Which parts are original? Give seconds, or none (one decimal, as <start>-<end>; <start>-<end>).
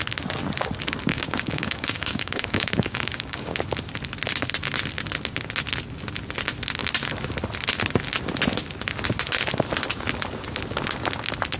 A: 0.0-1.1; 3.7-11.6